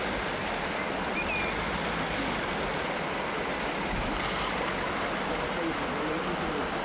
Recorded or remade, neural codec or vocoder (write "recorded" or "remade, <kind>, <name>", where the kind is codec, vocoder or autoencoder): recorded